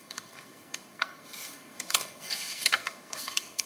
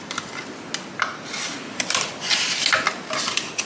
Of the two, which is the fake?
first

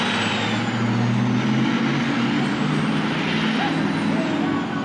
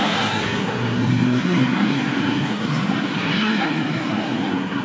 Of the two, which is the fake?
second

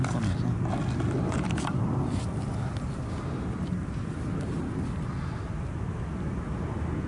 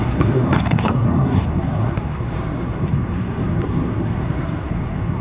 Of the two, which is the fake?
second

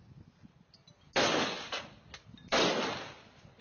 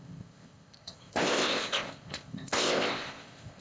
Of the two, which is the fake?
second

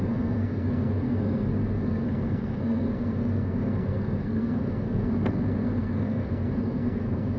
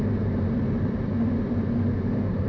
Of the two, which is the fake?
first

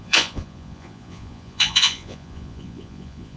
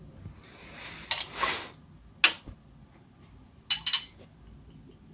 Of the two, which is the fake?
first